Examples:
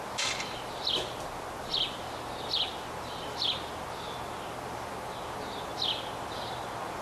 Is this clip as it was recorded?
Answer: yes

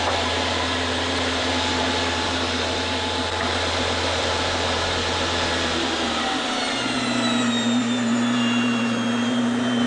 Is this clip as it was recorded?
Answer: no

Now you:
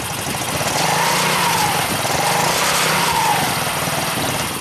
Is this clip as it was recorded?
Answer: yes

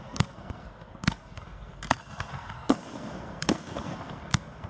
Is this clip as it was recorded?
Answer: no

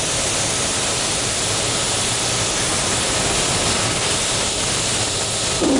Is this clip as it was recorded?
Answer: yes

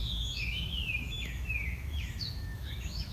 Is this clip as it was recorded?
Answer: no